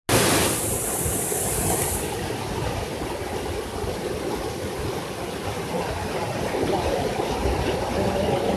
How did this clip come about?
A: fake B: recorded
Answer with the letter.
B